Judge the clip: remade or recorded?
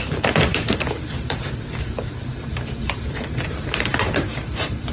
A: remade